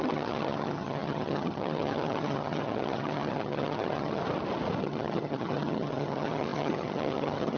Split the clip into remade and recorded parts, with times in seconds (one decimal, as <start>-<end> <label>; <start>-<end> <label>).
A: 0.0-4.2 remade; 4.2-4.8 recorded; 4.8-7.6 remade